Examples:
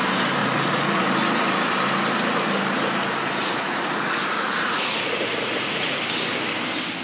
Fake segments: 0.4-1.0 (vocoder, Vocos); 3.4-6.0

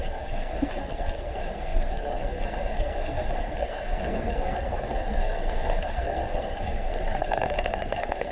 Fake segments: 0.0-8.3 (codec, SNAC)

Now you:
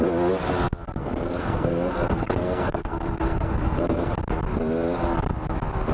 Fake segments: 1.0-4.2 (codec, SNAC)

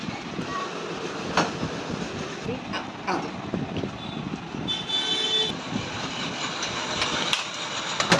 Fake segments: none

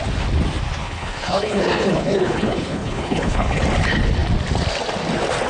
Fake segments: 0.8-3.6 (codec, HILCodec)